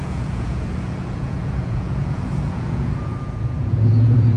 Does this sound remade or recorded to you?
remade